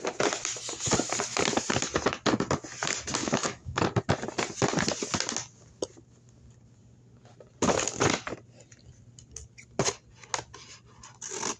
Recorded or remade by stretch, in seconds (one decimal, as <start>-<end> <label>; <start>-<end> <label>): 0.0-3.2 recorded; 3.2-3.8 remade; 3.8-11.6 recorded